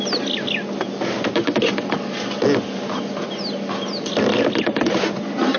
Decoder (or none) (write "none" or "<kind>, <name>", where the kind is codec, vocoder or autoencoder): none